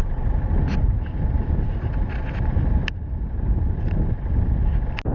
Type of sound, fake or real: real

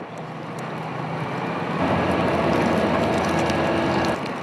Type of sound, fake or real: real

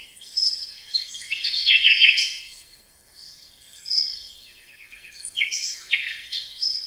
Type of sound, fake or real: fake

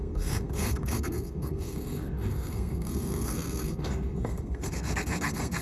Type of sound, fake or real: fake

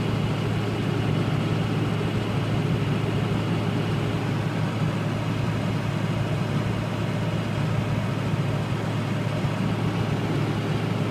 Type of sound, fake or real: real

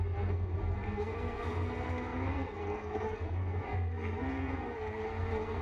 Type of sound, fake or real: fake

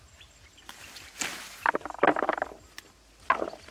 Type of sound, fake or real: real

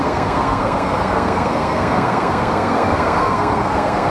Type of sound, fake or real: fake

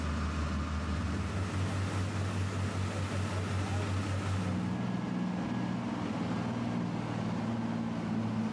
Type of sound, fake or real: real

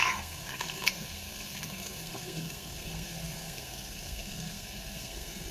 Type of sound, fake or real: fake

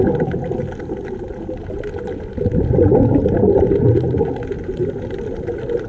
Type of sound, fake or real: real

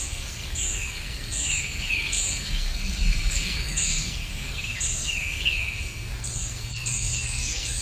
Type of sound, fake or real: fake